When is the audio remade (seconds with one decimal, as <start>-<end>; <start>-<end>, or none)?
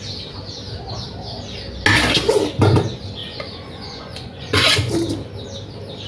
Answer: 3.2-4.9